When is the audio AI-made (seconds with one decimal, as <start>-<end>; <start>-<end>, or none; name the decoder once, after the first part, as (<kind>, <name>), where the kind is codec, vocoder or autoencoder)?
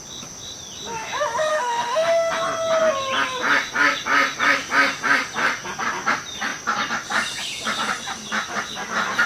1.5-2.3 (autoencoder, DAC-VAE)